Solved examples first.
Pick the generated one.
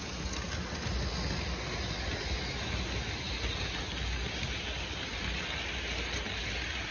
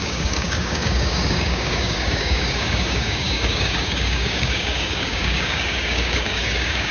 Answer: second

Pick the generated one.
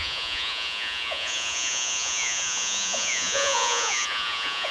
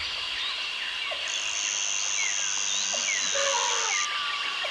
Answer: first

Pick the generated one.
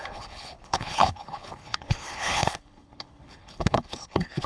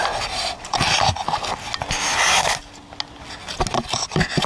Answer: first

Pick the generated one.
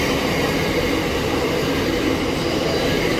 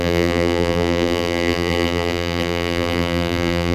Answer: second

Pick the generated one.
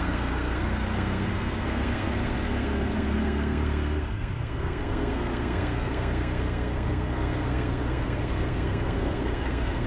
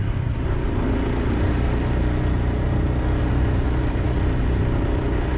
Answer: first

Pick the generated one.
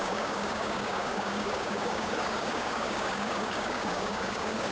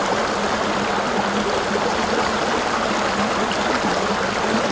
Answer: first